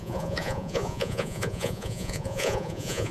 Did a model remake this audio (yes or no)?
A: yes